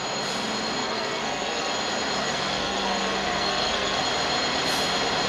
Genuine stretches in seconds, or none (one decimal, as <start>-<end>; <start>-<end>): 0.0-0.8; 1.7-2.2; 4.0-5.3